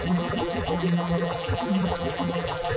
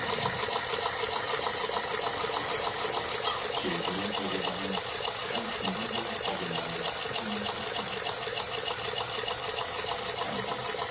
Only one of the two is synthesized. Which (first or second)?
first